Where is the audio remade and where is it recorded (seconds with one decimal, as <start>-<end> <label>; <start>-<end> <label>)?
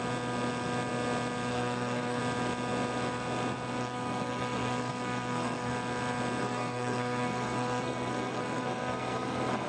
0.0-1.5 recorded; 1.5-2.2 remade; 2.2-3.8 recorded; 3.8-5.7 remade; 5.7-6.4 recorded; 6.4-9.7 remade